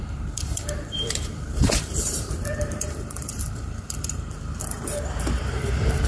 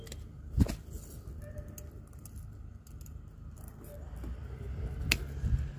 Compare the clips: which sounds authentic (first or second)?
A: second